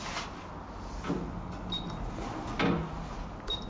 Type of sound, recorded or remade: recorded